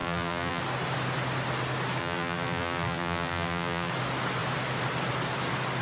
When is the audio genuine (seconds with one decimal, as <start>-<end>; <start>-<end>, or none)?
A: 0.6-2.0; 3.9-5.8